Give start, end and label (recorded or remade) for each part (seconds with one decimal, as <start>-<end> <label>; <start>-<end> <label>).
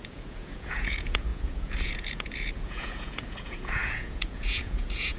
0.0-5.2 remade